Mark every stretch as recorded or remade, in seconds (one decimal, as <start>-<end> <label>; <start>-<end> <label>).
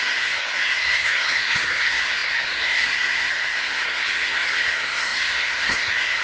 0.0-6.2 remade